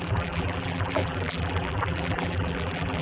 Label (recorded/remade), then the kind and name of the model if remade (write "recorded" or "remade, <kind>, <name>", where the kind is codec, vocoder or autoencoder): remade, vocoder, BigVGAN v2